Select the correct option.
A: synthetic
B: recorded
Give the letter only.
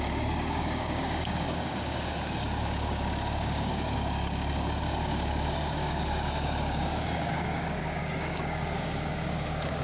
A